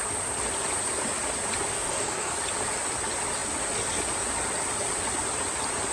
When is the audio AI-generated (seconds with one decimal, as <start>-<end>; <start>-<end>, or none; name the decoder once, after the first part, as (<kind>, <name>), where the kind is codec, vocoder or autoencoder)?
1.7-2.3 (codec, DAC)